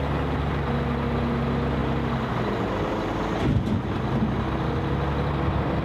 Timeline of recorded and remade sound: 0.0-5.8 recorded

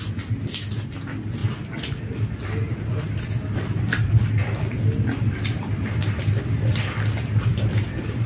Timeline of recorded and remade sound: 0.0-8.3 recorded

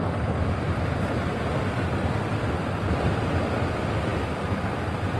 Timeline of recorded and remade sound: 0.0-5.2 recorded

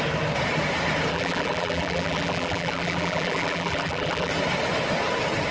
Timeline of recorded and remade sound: 0.0-1.1 recorded; 1.1-4.3 remade; 4.3-5.5 recorded

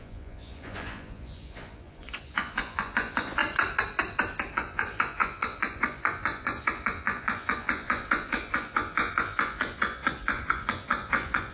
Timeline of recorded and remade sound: 0.0-3.4 remade; 3.4-4.5 recorded; 4.5-11.5 remade

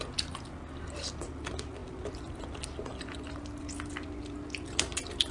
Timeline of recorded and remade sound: 0.0-5.3 recorded

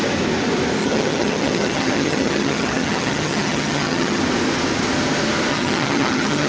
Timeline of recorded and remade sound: 0.0-0.8 recorded; 0.8-4.2 remade; 4.2-5.5 recorded; 5.5-6.5 remade

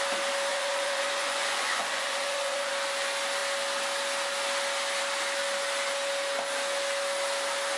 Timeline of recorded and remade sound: 0.0-0.5 recorded; 0.5-2.7 remade; 2.7-7.8 recorded